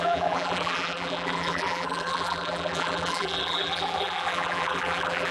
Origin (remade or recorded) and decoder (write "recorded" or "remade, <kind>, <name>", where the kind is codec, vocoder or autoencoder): remade, vocoder, BigVGAN v2